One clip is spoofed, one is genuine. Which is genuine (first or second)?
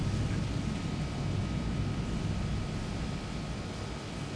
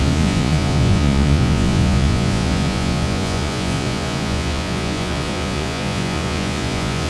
first